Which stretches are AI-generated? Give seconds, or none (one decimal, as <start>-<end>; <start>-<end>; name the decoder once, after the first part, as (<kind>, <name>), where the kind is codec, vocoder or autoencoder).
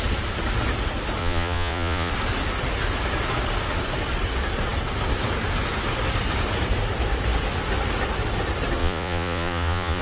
1.2-2.1 (vocoder, Vocos); 8.8-10.0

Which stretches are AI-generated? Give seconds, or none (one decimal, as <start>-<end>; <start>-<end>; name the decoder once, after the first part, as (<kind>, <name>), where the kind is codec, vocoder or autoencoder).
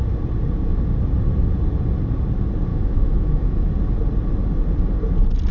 2.7-3.7 (autoencoder, DAC-VAE)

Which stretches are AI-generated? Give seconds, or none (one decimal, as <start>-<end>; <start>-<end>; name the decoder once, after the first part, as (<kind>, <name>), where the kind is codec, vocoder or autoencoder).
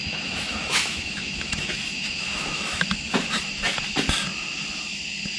0.0-3.2 (autoencoder, DAC-VAE)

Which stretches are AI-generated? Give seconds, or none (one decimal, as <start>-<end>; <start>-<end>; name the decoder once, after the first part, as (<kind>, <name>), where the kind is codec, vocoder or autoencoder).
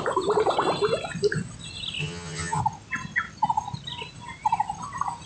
2.0-2.6 (vocoder, HiFi-GAN)